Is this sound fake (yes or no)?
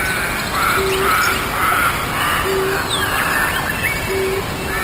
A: no